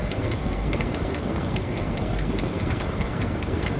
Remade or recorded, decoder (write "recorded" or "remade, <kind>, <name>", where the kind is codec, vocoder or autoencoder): remade, codec, SNAC